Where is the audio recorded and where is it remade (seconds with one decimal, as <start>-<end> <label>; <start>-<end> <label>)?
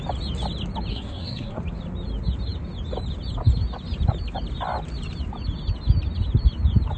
0.0-0.9 recorded; 0.9-1.6 remade; 1.6-7.0 recorded